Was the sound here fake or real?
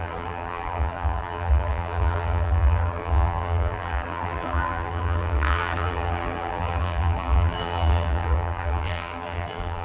fake